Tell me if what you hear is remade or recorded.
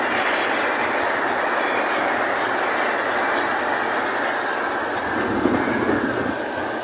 recorded